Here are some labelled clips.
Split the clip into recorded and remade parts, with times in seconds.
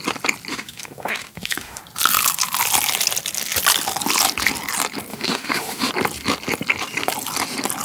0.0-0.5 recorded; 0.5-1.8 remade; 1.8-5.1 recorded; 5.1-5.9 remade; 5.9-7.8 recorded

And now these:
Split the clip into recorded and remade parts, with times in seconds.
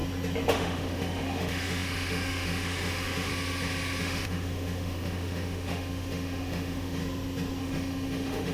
0.0-0.5 recorded; 0.5-3.3 remade; 3.3-4.0 recorded; 4.0-7.0 remade; 7.0-7.6 recorded; 7.6-8.5 remade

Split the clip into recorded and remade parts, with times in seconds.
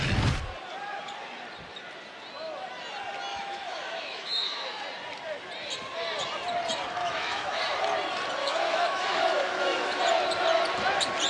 0.0-3.3 recorded; 3.3-4.8 remade; 4.8-7.0 recorded; 7.0-7.6 remade; 7.6-8.4 recorded; 8.4-10.0 remade; 10.0-11.3 recorded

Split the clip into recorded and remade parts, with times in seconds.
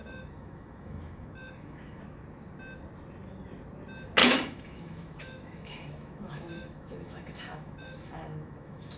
0.0-2.0 remade; 2.0-4.2 recorded; 4.2-9.0 remade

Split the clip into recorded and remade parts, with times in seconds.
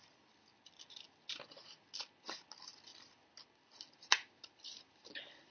0.0-5.5 recorded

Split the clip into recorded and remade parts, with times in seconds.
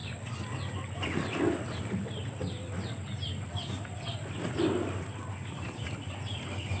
0.0-6.8 recorded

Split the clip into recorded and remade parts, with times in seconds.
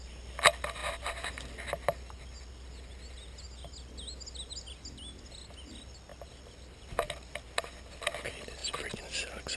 0.0-9.6 recorded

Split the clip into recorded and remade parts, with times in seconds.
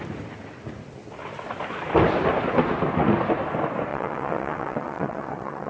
0.0-3.9 recorded; 3.9-5.7 remade